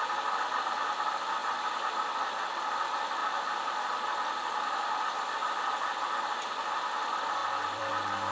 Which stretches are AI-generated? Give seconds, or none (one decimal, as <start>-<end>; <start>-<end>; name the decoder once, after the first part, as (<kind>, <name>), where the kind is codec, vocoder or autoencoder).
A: 7.4-7.9 (vocoder, BigVGAN v2)